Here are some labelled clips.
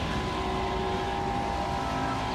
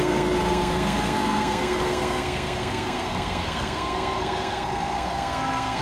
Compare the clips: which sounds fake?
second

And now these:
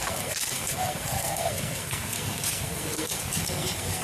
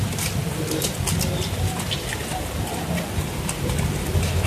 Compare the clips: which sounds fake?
first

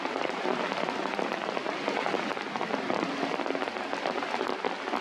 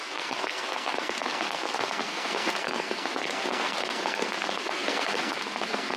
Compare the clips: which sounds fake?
second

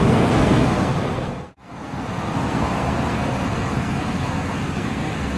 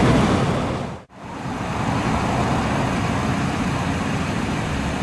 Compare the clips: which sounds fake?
first